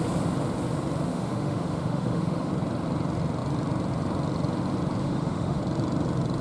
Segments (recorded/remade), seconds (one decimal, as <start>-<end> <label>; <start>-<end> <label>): 0.0-1.1 recorded; 1.1-2.5 remade; 2.5-5.0 recorded; 5.0-5.6 remade; 5.6-6.4 recorded